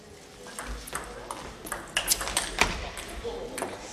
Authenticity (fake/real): real